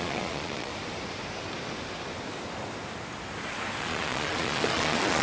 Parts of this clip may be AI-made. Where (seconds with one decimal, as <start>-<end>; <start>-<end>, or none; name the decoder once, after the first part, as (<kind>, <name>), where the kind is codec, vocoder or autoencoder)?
0.0-0.7 (vocoder, Vocos); 3.8-5.2